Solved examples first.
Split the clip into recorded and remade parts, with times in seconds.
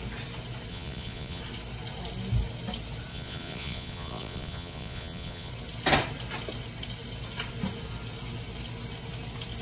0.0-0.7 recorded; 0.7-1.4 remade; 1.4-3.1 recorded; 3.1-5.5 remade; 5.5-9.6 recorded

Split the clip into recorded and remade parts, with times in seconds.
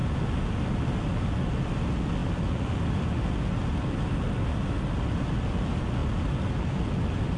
0.0-7.4 recorded